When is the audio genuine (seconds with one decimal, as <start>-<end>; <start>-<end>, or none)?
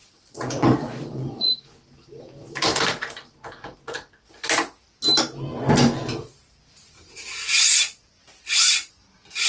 1.5-9.5